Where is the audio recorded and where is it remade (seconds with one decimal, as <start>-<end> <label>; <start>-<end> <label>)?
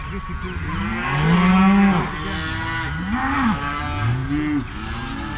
0.0-0.9 recorded; 0.9-1.5 remade; 1.5-3.2 recorded; 3.2-3.8 remade; 3.8-5.4 recorded